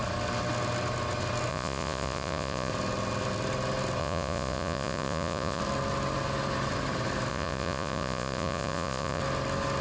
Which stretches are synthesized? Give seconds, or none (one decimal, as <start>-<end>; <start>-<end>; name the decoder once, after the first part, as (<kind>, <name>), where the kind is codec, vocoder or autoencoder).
1.5-2.7 (vocoder, Vocos); 4.0-5.6; 7.3-9.2